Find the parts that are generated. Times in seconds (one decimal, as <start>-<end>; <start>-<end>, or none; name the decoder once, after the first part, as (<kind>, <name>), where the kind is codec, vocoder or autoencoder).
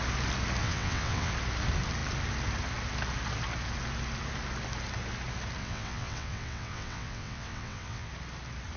0.6-1.3 (vocoder, WaveNeXt); 5.6-8.1